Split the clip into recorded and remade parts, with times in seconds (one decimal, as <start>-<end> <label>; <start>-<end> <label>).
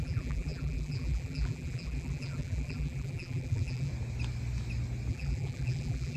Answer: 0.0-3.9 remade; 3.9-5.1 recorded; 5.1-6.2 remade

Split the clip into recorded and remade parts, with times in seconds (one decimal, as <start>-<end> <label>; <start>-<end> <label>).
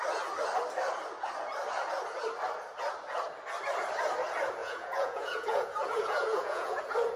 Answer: 0.0-4.6 recorded; 4.6-6.8 remade; 6.8-7.2 recorded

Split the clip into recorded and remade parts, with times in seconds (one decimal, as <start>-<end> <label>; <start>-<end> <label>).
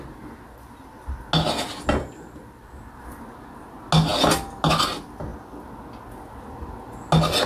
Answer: 0.0-7.5 recorded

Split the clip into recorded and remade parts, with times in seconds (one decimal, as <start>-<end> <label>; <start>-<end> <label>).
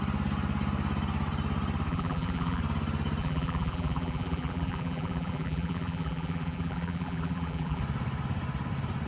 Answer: 0.0-1.9 recorded; 1.9-2.6 remade; 2.6-3.2 recorded; 3.2-7.8 remade; 7.8-9.1 recorded